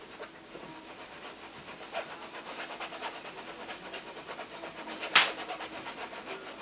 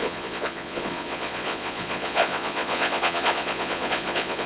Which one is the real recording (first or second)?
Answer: first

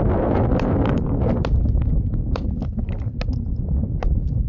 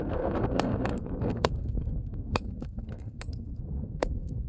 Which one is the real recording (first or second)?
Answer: first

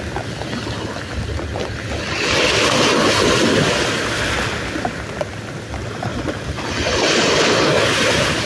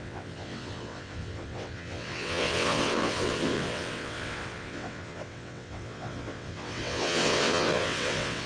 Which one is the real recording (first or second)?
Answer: first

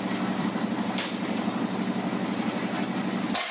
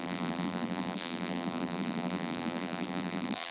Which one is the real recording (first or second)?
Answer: first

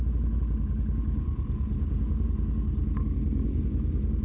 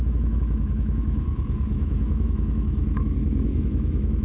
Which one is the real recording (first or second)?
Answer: first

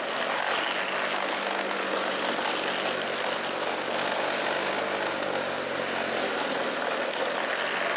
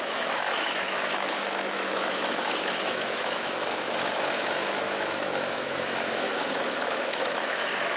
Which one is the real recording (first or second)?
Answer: first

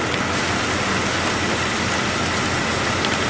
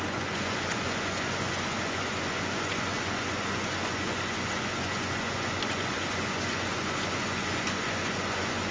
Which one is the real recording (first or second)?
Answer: first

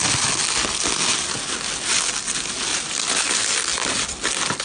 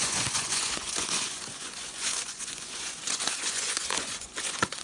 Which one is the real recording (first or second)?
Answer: first